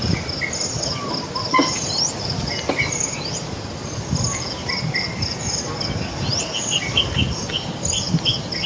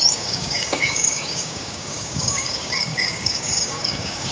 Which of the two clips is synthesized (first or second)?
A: second